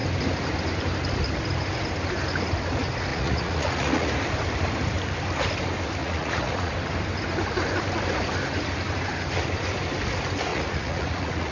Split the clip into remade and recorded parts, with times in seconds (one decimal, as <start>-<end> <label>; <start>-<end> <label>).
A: 0.0-3.1 recorded; 3.1-4.1 remade; 4.1-6.0 recorded; 6.0-6.7 remade; 6.7-10.5 recorded; 10.5-11.5 remade